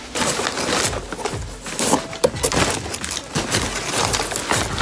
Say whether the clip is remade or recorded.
recorded